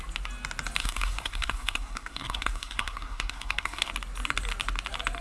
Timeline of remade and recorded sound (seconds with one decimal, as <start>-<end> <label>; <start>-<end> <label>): 0.0-0.8 recorded; 0.8-3.9 remade; 3.9-5.2 recorded